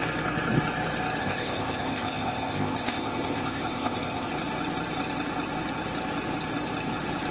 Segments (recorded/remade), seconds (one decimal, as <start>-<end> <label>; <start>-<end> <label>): 0.0-1.2 recorded; 1.2-4.3 remade; 4.3-7.3 recorded